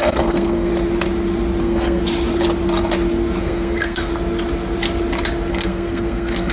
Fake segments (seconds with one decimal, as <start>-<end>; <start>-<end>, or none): 0.0-0.7; 1.6-2.0; 3.4-4.1; 5.5-6.5

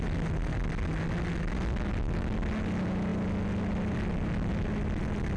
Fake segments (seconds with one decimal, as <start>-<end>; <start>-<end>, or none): none